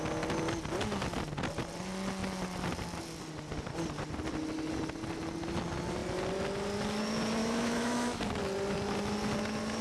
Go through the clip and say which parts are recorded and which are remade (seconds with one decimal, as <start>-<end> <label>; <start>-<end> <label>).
0.0-7.4 recorded; 7.4-8.2 remade; 8.2-9.8 recorded